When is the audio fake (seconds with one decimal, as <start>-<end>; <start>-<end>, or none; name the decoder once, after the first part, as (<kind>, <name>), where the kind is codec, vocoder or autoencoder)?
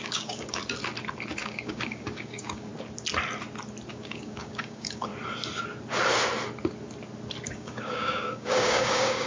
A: 0.0-0.6 (codec, DAC); 1.4-2.7; 3.9-5.1; 7.5-9.3